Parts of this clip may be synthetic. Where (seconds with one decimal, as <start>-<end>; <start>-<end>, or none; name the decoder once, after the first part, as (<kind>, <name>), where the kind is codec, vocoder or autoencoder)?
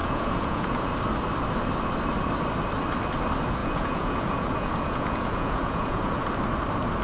0.0-0.9 (vocoder, Vocos); 3.6-6.3